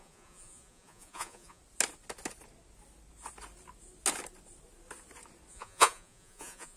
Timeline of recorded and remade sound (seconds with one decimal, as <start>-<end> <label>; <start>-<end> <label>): 0.0-1.6 remade; 1.6-5.5 recorded; 5.5-6.8 remade